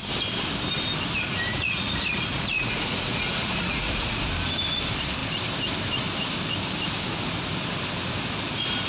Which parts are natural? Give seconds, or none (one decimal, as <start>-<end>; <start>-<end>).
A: 0.0-1.5; 4.3-8.9